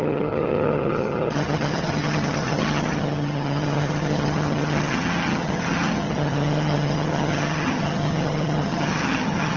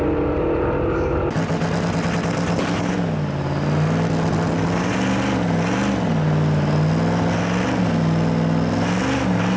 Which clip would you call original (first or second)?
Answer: second